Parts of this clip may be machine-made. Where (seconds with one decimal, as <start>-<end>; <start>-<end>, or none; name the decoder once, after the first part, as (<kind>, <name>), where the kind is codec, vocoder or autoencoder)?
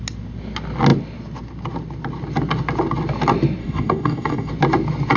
3.6-4.5 (codec, DAC)